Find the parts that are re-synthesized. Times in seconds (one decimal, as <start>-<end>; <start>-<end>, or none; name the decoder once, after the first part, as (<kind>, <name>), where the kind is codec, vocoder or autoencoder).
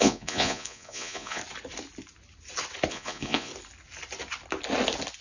0.0-1.4 (vocoder, Vocos); 2.9-3.5